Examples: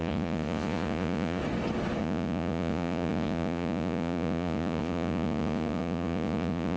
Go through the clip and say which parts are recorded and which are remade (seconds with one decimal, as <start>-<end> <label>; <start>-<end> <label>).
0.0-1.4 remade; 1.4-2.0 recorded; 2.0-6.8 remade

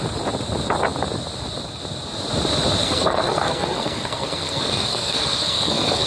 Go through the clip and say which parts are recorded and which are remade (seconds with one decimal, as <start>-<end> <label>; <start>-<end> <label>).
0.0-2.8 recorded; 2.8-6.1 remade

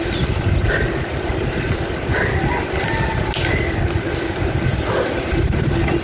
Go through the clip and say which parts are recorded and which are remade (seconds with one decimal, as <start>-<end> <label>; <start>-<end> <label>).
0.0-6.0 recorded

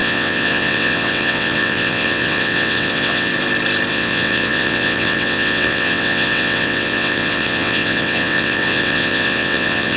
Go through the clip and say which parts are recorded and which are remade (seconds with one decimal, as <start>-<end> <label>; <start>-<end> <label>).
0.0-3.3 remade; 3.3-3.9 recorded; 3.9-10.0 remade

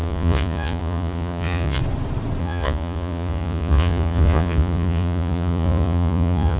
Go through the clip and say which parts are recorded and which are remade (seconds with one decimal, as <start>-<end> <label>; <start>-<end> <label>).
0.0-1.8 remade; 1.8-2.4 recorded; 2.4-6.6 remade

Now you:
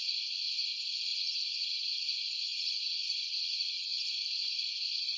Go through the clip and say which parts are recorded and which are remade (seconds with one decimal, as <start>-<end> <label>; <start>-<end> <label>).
0.0-1.1 recorded; 1.1-1.9 remade; 1.9-2.5 recorded; 2.5-3.9 remade; 3.9-5.2 recorded

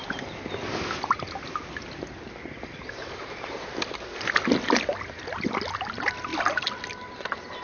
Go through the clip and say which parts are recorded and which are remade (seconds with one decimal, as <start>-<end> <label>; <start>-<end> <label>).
0.0-7.6 recorded

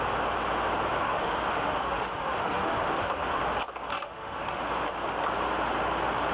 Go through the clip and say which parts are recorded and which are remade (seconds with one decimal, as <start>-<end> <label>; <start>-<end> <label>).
0.0-1.0 recorded; 1.0-3.4 remade; 3.4-3.9 recorded; 3.9-4.6 remade; 4.6-6.3 recorded